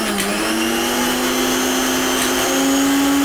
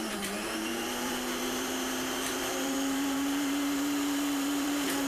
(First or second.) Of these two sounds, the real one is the first